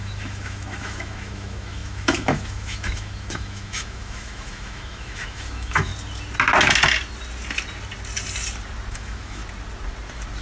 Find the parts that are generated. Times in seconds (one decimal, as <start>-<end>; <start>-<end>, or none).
0.0-5.9; 8.9-9.4